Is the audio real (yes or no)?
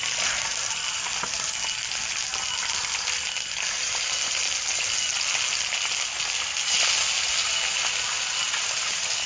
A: yes